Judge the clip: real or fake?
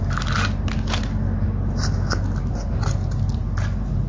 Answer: real